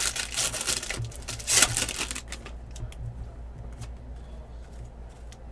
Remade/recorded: recorded